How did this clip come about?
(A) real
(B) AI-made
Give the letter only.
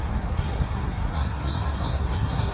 B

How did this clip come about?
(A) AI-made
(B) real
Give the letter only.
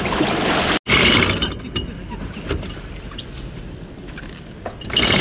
B